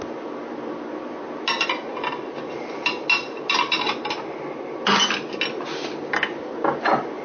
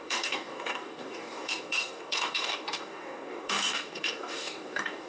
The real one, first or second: first